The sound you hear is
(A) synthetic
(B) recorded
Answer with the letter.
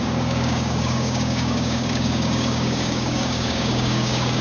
A